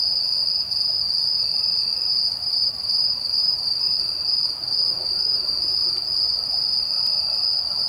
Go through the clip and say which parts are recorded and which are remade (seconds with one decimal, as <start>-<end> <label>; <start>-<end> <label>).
0.0-2.1 recorded; 2.1-3.9 remade; 3.9-7.9 recorded